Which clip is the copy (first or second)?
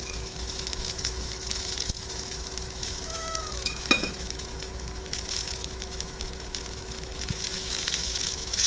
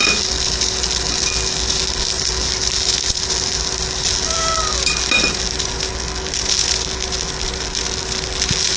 first